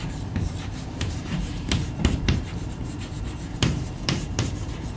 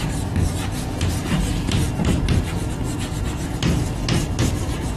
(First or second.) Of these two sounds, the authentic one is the second